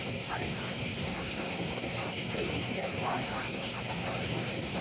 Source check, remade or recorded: remade